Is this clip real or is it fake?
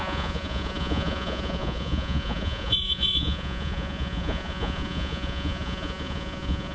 fake